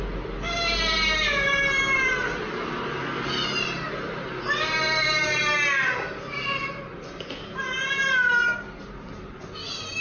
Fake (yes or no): no